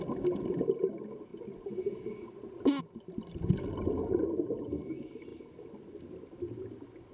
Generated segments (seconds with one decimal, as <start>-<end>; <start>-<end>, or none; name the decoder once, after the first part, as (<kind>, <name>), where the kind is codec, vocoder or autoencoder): none